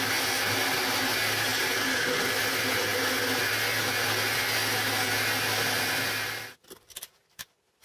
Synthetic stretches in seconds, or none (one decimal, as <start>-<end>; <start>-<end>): 1.5-2.1

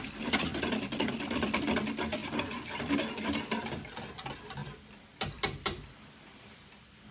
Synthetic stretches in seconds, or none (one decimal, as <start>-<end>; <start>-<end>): 0.5-1.8; 2.2-2.9; 4.6-6.1

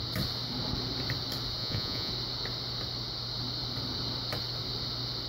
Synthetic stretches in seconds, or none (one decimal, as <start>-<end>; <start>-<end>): 1.6-2.1

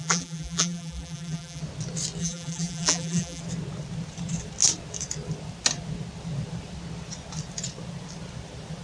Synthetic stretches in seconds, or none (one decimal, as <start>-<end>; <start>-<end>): 0.0-1.6; 2.2-3.4